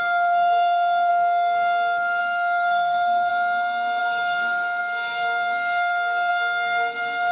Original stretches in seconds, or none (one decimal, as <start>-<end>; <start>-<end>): 1.1-2.2; 3.3-4.0